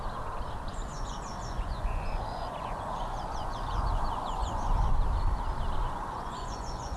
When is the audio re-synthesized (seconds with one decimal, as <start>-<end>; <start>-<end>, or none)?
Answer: 0.7-4.9; 5.8-7.0